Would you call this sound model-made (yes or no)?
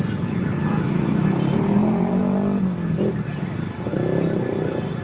no